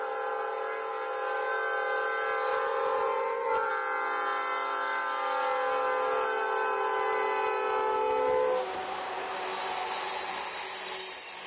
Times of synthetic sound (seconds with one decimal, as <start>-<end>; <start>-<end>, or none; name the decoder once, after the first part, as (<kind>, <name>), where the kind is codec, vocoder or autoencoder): 2.5-3.7 (vocoder, Vocos); 9.5-10.3